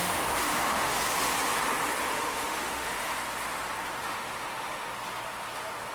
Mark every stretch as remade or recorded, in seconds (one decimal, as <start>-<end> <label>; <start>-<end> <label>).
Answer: 0.0-1.0 remade; 1.0-2.1 recorded; 2.1-3.1 remade; 3.1-4.0 recorded; 4.0-4.9 remade; 4.9-5.9 recorded